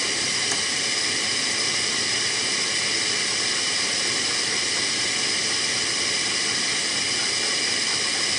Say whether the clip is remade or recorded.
recorded